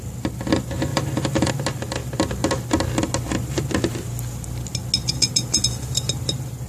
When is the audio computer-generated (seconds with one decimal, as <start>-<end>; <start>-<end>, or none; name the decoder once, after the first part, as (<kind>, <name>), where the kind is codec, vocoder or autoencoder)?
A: 0.9-1.5 (vocoder, BigVGAN v2)